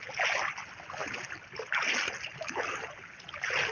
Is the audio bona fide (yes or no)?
yes